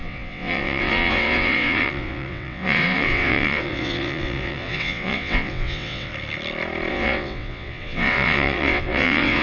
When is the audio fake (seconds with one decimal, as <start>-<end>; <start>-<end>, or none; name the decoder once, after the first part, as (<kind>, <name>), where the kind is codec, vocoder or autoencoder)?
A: 0.0-6.1 (vocoder, WaveNeXt); 6.9-9.4